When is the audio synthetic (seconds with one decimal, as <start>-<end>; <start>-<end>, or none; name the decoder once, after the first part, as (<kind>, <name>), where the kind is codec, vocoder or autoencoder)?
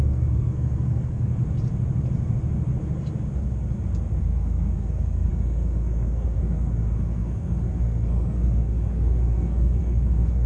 0.0-1.3 (codec, SNAC); 4.2-10.5